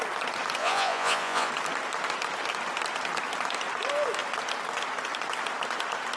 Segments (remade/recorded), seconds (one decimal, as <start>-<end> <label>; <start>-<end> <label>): 0.0-0.6 recorded; 0.6-1.5 remade; 1.5-6.2 recorded